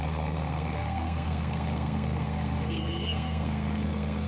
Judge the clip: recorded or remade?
remade